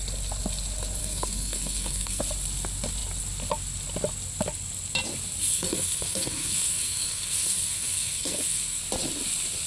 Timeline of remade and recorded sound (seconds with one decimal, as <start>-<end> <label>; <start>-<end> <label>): 0.0-1.0 recorded; 1.0-2.2 remade; 2.2-5.4 recorded; 5.4-8.8 remade; 8.8-9.7 recorded